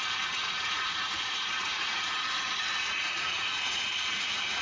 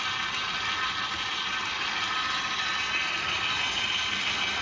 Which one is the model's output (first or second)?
first